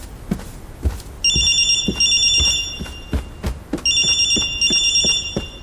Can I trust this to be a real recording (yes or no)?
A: yes